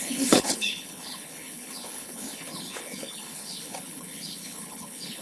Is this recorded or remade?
remade